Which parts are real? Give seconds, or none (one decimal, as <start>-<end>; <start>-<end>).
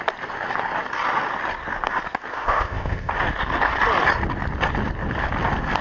0.0-2.3; 3.1-5.8